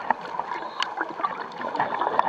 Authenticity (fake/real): real